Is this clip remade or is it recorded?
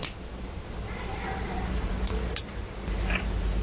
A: recorded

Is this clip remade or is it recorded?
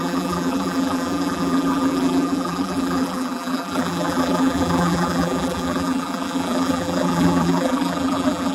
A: remade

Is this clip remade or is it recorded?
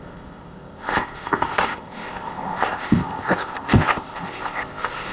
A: remade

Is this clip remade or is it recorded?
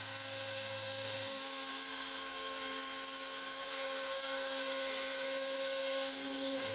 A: remade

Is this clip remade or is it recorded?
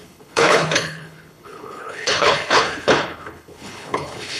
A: remade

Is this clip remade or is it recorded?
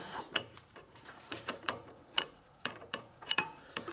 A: remade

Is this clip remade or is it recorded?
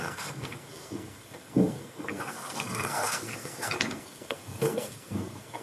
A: remade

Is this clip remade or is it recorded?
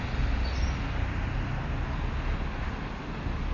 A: recorded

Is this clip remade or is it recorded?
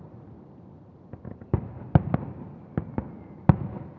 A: recorded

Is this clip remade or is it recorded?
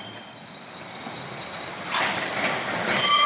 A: recorded